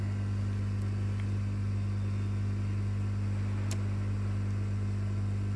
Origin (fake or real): real